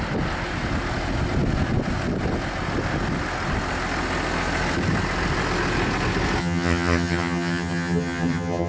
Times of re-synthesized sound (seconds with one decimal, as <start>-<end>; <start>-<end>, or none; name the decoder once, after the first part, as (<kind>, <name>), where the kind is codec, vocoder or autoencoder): 6.4-8.7 (vocoder, HiFi-GAN)